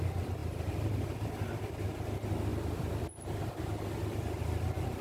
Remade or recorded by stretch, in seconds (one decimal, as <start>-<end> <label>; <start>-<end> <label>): 0.0-0.4 recorded; 0.4-1.7 remade; 1.7-2.5 recorded; 2.5-3.4 remade; 3.4-5.0 recorded